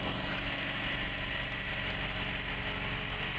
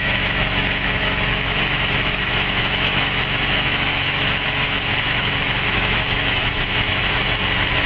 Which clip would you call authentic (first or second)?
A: first